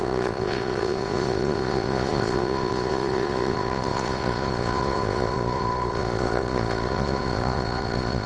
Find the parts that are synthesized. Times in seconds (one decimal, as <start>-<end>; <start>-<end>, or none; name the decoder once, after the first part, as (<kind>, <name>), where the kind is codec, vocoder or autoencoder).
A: 0.0-8.3 (vocoder, Vocos)